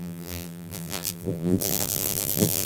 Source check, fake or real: fake